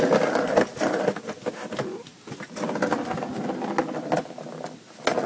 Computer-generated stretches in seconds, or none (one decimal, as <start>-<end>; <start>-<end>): none